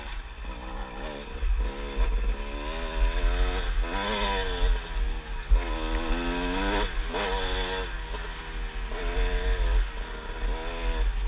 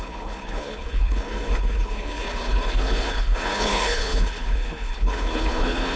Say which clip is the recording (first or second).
first